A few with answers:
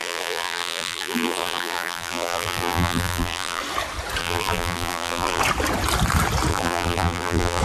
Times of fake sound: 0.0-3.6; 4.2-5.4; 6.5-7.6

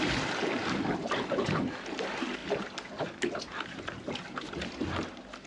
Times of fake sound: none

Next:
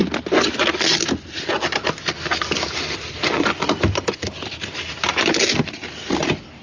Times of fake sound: none

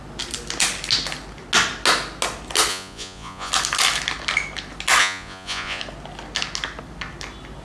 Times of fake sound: 2.7-3.5; 5.0-5.8

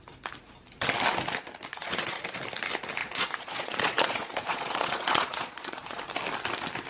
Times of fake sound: 1.7-2.2; 3.0-6.0

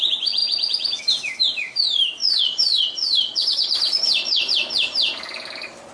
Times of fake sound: 2.2-4.5